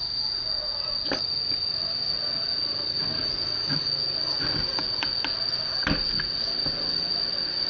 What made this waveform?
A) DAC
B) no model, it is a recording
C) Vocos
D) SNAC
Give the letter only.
B